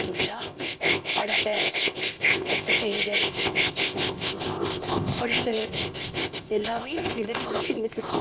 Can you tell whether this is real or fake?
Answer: fake